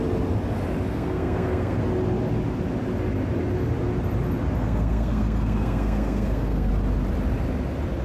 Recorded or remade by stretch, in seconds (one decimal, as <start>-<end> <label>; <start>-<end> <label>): 0.0-0.9 recorded; 0.9-1.8 remade; 1.8-4.6 recorded; 4.6-6.7 remade; 6.7-8.0 recorded